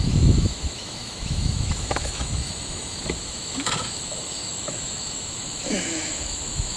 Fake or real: fake